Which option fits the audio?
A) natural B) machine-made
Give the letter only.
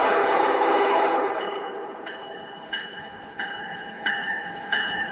B